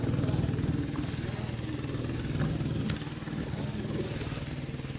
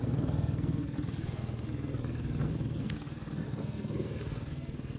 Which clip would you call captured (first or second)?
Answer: first